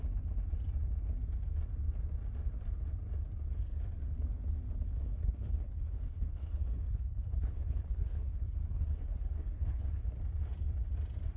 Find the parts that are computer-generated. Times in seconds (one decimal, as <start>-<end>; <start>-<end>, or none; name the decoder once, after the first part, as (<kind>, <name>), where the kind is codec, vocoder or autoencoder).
5.0-10.1 (codec, HILCodec)